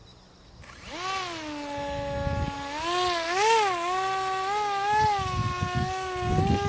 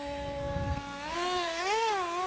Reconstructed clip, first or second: second